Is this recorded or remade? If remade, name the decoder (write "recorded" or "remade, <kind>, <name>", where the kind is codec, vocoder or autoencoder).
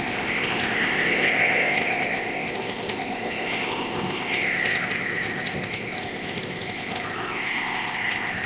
remade, codec, ZipCodec